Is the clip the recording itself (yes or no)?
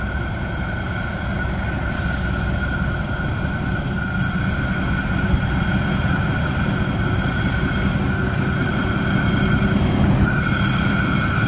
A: yes